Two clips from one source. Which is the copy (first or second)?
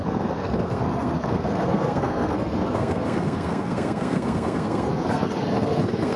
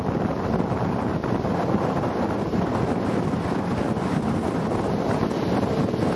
first